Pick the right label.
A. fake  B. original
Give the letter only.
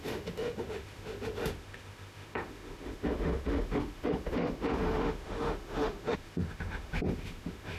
A